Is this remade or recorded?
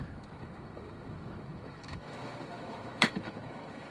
remade